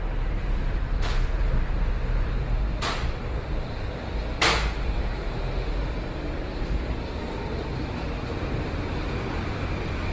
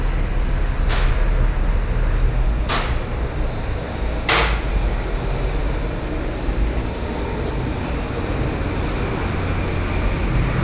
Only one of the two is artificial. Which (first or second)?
first